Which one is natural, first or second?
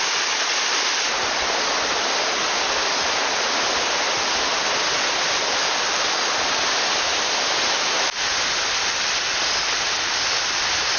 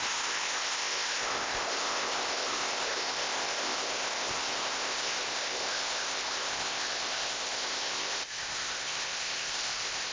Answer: first